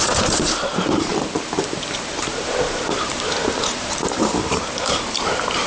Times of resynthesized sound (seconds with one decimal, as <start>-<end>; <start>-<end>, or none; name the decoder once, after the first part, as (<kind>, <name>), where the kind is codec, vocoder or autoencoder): 0.0-1.1 (vocoder, BigVGAN v2); 2.1-5.7